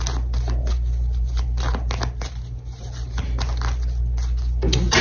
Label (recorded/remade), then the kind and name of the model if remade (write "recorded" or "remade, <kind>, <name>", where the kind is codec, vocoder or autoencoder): recorded